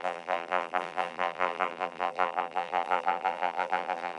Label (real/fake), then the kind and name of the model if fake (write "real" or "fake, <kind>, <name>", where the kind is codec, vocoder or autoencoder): fake, vocoder, BigVGAN v2